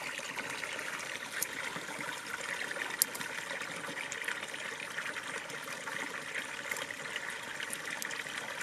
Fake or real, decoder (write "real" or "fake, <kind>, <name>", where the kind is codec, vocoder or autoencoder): real